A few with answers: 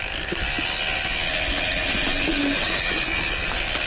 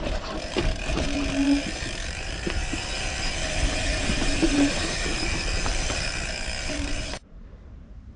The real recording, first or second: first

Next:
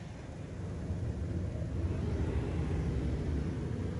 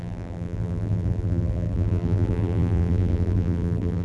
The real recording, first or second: first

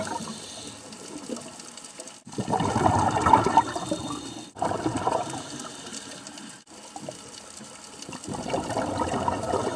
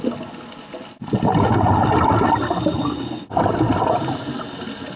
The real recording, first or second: second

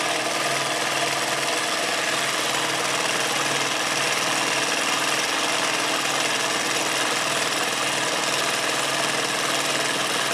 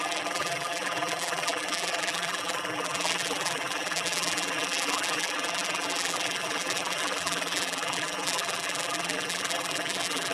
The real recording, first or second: first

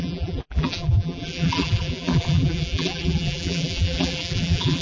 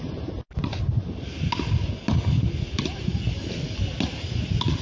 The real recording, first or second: second